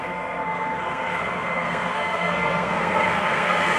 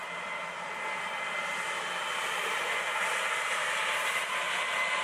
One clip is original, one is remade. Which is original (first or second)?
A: second